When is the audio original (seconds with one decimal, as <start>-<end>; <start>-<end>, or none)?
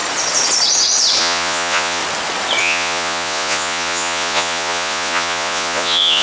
0.0-1.2; 2.0-2.6